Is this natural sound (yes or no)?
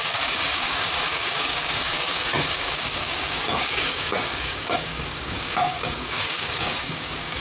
no